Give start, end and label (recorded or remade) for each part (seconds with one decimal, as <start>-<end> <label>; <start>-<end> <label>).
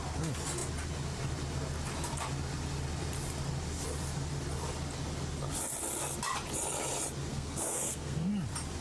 0.0-7.3 recorded; 7.3-8.3 remade; 8.3-8.8 recorded